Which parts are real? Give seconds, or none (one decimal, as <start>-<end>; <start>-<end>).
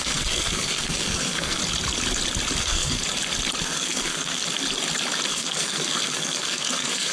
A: 1.6-2.6; 3.0-3.6; 4.4-5.3